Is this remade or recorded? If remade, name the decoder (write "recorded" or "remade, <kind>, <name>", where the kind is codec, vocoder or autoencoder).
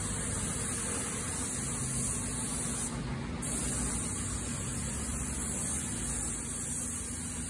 recorded